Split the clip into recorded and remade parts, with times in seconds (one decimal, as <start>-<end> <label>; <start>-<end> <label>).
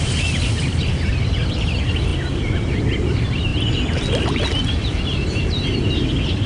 0.0-6.5 recorded